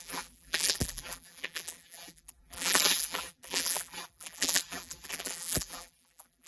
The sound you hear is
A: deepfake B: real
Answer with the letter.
A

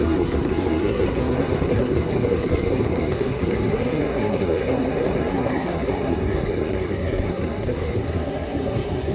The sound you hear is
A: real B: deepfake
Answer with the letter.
B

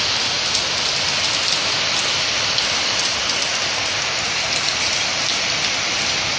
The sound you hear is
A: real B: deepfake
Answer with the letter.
A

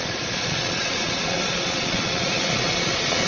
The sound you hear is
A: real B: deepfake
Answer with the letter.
B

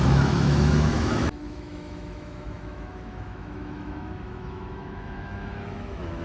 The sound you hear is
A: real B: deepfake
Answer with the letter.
B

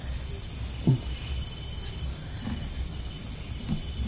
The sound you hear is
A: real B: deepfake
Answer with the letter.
A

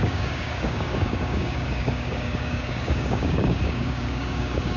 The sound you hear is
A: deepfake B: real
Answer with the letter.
A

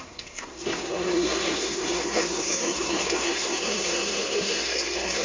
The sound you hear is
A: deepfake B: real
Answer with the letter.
A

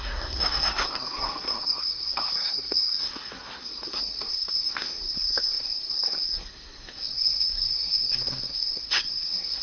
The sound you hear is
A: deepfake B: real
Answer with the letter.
A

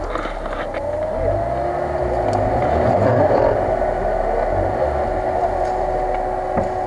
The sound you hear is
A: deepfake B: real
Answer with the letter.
B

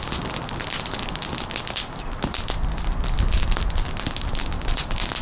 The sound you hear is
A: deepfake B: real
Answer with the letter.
B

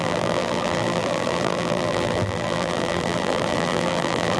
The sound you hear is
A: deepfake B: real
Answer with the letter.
A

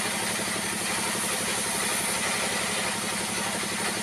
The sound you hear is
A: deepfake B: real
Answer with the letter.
B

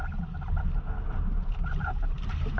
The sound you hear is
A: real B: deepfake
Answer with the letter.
A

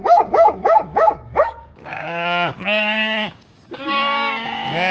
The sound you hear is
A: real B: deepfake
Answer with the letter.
B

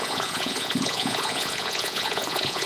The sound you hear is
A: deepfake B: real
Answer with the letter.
A